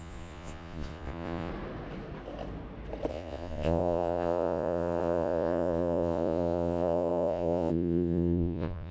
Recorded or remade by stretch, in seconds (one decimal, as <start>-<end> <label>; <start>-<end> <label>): 0.0-1.5 remade; 1.5-3.1 recorded; 3.1-8.9 remade